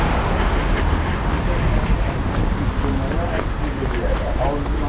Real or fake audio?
real